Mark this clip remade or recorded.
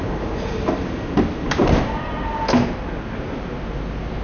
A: recorded